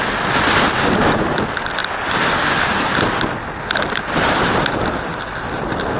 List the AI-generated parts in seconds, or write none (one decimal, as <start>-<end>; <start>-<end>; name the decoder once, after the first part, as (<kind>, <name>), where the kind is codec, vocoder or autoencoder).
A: none